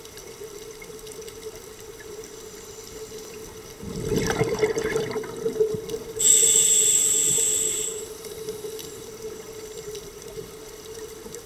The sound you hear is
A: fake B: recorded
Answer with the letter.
A